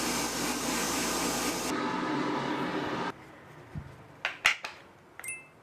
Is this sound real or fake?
real